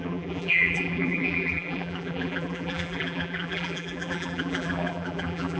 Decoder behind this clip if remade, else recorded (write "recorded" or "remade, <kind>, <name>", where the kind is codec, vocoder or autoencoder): remade, vocoder, BigVGAN v2